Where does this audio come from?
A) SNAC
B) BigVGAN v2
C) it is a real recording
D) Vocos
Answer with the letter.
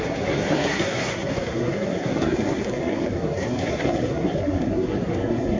A